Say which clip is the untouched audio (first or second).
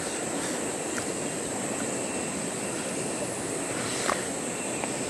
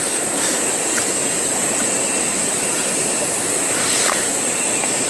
first